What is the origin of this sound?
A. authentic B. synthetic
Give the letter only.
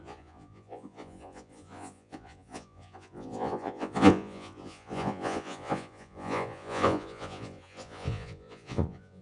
B